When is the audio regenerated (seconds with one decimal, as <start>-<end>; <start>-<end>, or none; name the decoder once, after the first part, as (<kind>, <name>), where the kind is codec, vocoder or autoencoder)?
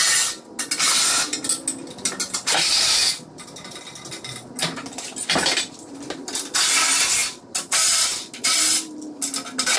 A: none